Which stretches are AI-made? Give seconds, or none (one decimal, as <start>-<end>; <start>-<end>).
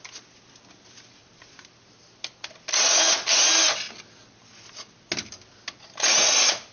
none